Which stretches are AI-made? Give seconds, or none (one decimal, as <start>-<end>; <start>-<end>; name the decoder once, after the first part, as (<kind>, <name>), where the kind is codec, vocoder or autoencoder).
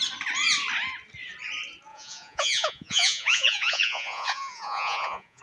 1.9-5.4 (vocoder, Vocos)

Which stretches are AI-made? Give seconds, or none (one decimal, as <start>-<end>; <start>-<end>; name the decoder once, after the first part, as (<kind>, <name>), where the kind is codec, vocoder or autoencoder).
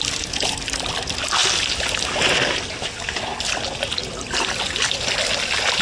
none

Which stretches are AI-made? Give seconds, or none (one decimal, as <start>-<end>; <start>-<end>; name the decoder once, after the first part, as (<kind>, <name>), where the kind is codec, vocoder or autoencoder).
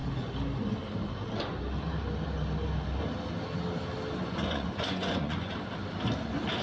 4.2-5.5 (vocoder, Vocos)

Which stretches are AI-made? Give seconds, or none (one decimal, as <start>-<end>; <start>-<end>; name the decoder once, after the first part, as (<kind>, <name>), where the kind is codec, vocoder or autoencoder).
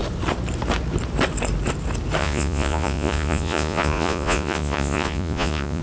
2.2-5.8 (vocoder, Vocos)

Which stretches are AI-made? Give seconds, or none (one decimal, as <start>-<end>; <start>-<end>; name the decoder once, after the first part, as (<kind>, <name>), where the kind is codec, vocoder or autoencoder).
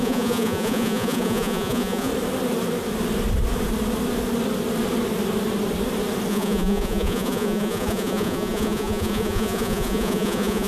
0.0-2.1 (vocoder, Vocos); 6.3-10.7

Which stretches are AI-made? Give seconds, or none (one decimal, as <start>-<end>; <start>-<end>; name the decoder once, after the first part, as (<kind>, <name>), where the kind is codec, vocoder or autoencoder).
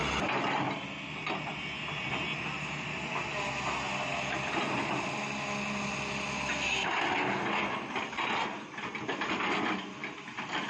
none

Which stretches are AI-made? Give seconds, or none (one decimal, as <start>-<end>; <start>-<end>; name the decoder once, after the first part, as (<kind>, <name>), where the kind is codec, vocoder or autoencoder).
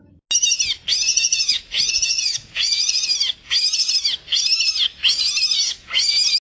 1.1-3.0 (vocoder, Vocos)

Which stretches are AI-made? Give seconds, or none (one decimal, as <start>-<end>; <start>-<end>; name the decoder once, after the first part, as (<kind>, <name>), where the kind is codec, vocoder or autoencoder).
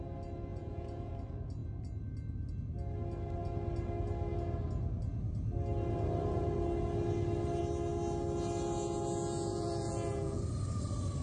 0.5-1.1 (vocoder, Vocos); 9.5-10.4